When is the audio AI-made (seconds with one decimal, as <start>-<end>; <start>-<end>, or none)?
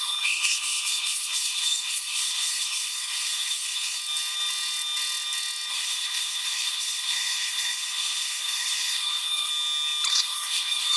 0.0-4.0; 5.7-9.5; 10.1-11.0